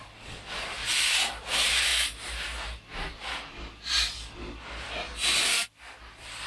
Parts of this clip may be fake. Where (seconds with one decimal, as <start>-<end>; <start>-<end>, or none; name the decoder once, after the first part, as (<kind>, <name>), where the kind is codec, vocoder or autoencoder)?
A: 0.0-1.9 (vocoder, BigVGAN v2); 5.6-6.5